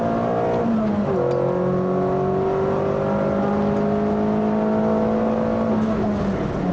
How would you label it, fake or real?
real